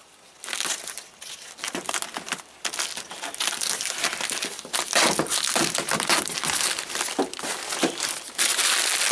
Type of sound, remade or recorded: recorded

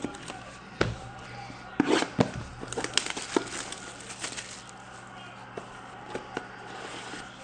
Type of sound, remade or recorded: recorded